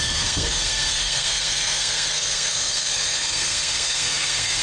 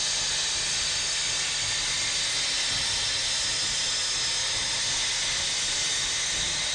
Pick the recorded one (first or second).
second